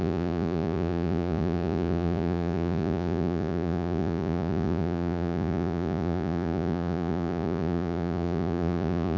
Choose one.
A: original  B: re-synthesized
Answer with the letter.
B